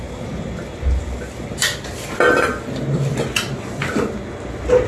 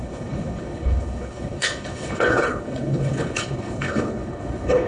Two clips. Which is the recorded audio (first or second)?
first